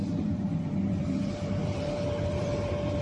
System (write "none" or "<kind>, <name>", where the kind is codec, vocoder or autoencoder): vocoder, BigVGAN v2